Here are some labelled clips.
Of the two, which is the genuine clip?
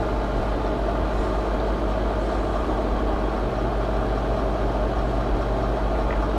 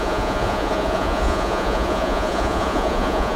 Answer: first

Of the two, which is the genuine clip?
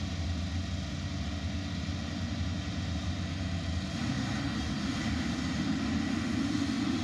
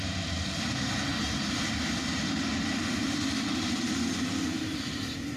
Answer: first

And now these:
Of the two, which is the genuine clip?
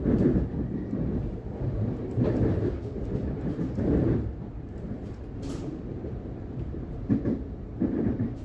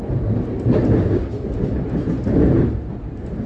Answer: second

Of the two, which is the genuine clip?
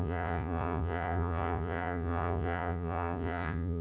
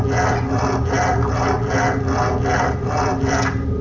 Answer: second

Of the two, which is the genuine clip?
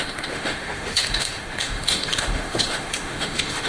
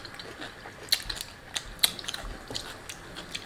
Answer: second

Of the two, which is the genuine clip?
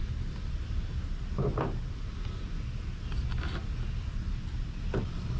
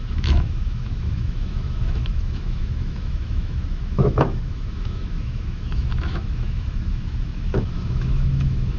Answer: first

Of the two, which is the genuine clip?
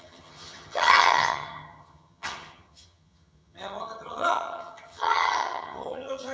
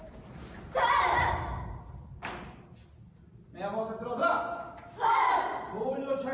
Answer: second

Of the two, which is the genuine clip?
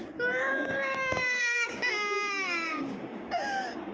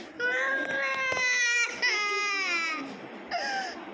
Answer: second